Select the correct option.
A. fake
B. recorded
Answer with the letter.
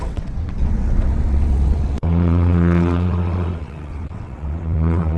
A